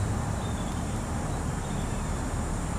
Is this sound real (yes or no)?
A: no